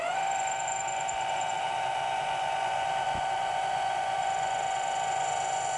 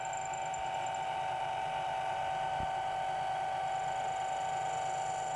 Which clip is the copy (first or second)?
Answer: first